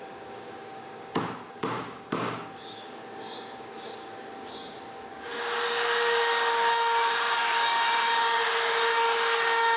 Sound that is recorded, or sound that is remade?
remade